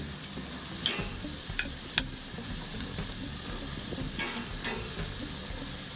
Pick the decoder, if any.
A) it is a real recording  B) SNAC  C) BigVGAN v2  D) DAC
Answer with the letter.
A